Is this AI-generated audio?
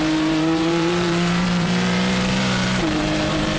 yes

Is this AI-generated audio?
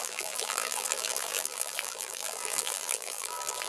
yes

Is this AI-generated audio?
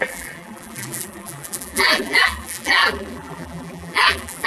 yes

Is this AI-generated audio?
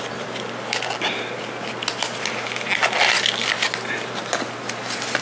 no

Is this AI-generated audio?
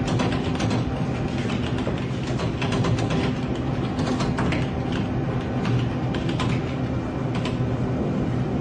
no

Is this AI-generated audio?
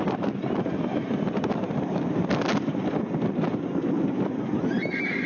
yes